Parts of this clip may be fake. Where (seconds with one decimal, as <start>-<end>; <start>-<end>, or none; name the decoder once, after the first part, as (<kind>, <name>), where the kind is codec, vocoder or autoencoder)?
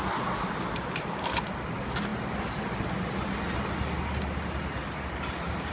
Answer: none